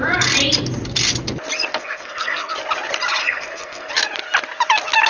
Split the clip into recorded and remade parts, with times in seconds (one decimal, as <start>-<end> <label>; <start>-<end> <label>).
0.0-1.7 recorded; 1.7-2.5 remade; 2.5-3.2 recorded; 3.2-3.9 remade; 3.9-5.1 recorded